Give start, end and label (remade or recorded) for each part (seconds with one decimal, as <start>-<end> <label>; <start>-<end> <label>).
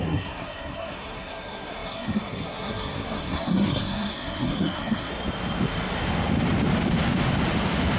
0.0-5.1 remade; 5.1-8.0 recorded